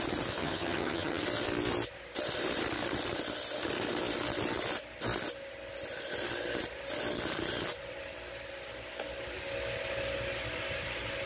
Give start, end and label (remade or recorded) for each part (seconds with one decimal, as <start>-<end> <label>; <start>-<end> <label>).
0.0-0.4 recorded; 0.4-1.2 remade; 1.2-11.3 recorded